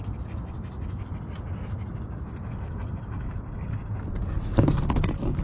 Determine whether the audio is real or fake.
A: real